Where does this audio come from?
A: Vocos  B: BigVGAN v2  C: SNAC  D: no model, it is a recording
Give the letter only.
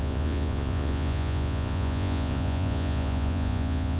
A